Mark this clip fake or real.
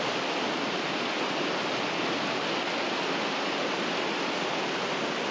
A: real